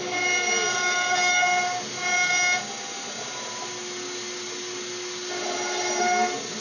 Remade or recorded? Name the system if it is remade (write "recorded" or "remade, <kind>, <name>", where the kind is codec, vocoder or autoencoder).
recorded